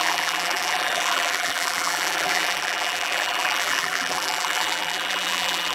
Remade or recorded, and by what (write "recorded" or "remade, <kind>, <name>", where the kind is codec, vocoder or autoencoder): remade, vocoder, BigVGAN v2